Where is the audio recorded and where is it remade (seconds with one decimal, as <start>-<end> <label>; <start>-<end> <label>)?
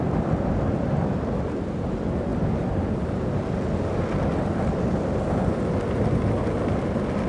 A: 0.0-7.3 recorded